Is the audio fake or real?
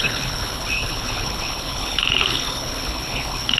fake